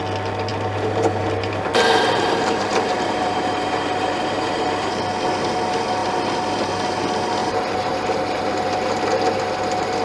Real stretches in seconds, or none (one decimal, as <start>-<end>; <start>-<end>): 0.0-0.5; 5.0-7.4; 8.5-10.0